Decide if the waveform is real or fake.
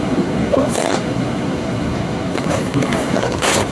fake